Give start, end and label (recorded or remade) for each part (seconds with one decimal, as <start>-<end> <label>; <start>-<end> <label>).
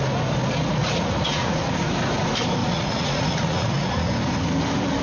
0.0-0.8 recorded; 0.8-1.6 remade; 1.6-2.6 recorded; 2.6-4.1 remade; 4.1-5.0 recorded